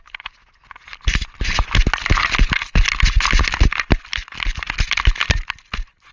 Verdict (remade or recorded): recorded